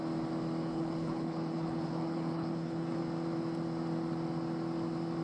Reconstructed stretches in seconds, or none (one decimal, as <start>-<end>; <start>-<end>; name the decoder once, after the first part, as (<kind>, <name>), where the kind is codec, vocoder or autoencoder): 0.6-3.0 (codec, HILCodec)